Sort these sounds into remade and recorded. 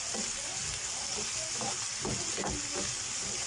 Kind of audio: recorded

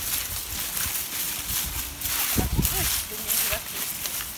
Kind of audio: recorded